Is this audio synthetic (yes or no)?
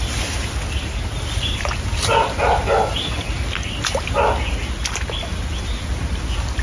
no